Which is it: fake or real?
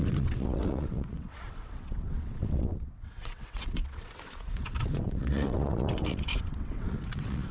fake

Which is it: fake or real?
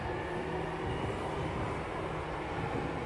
real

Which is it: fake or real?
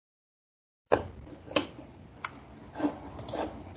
real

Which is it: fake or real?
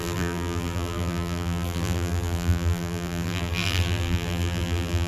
fake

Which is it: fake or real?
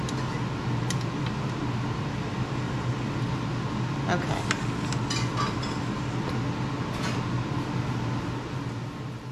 real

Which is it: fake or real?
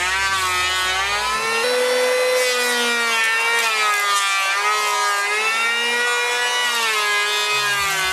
real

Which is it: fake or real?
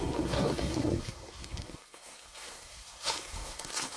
fake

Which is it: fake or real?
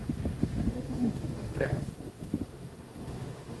fake